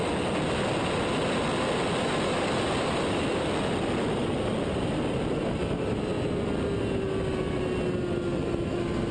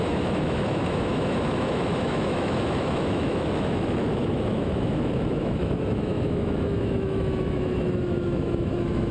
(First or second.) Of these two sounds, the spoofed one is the second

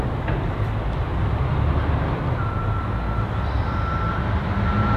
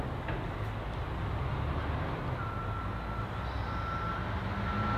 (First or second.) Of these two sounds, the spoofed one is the first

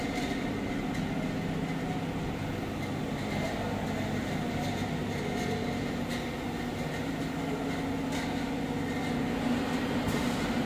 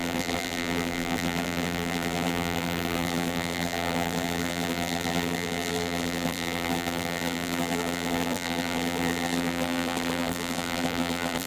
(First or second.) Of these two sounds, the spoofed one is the second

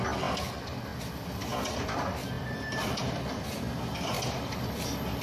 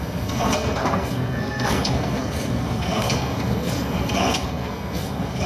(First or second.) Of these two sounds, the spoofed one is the second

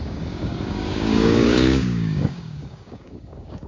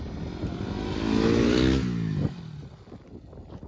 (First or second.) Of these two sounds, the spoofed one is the first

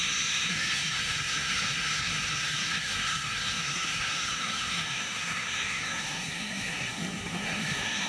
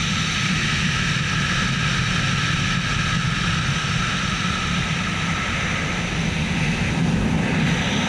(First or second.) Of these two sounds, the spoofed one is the first